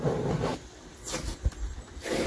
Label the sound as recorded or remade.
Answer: recorded